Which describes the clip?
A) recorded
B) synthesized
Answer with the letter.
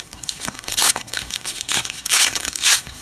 B